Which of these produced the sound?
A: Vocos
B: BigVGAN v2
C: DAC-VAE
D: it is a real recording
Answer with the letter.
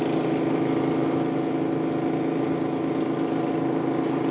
D